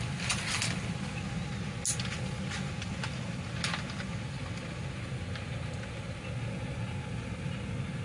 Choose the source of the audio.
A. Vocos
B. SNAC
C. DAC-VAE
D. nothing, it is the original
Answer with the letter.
D